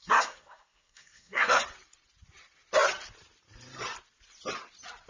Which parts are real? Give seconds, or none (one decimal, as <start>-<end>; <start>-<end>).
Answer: 1.6-5.1